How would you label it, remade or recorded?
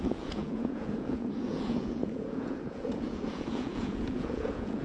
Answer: remade